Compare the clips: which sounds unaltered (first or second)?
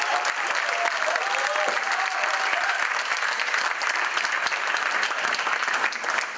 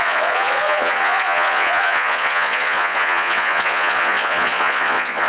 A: first